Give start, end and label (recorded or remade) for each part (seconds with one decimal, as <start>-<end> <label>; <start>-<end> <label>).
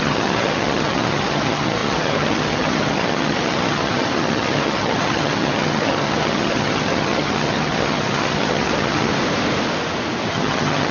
0.0-9.1 remade; 9.1-10.3 recorded; 10.3-10.9 remade